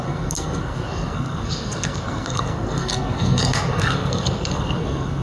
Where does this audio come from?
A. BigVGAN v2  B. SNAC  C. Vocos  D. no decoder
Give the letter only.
B